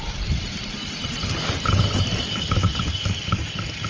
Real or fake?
real